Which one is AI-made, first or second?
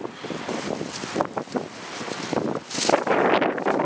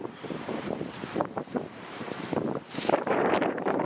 second